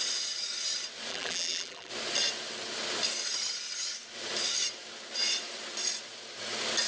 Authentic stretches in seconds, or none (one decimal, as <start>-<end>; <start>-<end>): 0.0-1.1; 1.9-6.9